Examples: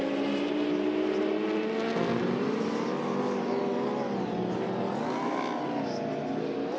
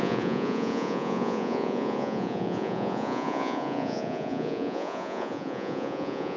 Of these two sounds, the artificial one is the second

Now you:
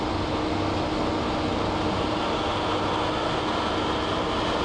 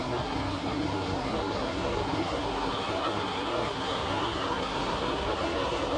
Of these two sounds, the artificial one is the second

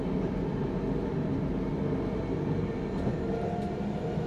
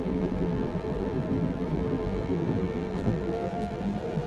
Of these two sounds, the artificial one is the second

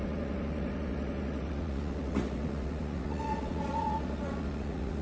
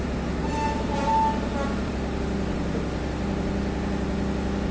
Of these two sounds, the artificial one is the first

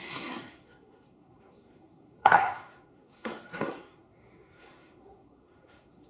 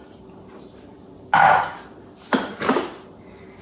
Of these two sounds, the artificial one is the first